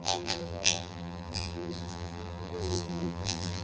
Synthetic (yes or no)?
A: yes